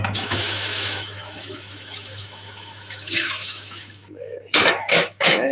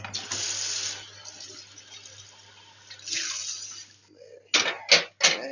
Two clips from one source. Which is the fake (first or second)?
first